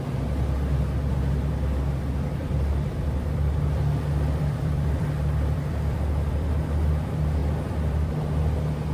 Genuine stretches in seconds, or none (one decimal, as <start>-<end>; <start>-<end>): 0.0-2.4; 6.6-7.4; 8.1-8.9